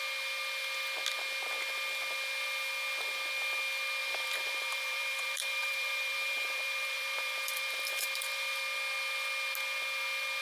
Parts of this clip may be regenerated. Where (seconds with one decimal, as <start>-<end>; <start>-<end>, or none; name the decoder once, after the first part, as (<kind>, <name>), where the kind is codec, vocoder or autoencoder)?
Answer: 4.0-8.6 (vocoder, BigVGAN v2)